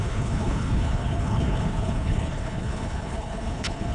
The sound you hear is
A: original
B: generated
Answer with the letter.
B